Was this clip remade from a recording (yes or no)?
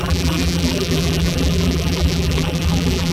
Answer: yes